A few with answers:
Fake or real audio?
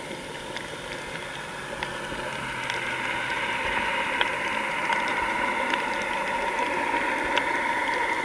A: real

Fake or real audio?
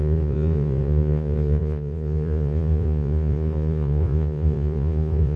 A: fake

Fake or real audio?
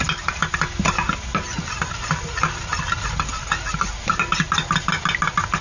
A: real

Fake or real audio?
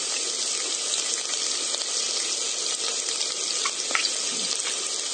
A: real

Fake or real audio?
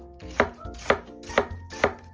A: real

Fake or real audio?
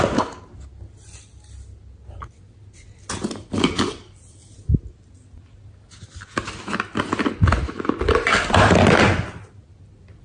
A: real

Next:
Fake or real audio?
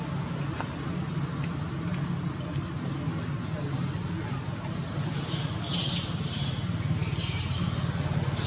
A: real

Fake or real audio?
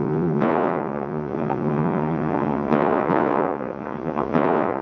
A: fake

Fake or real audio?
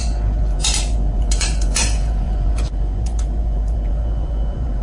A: fake